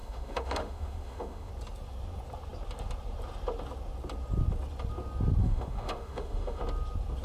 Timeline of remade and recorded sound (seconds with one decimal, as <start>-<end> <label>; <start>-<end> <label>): 0.0-1.5 remade; 1.5-5.4 recorded; 5.4-6.6 remade; 6.6-7.2 recorded